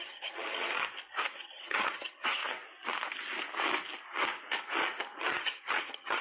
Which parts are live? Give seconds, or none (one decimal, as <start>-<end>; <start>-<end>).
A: 0.7-1.2; 2.4-5.2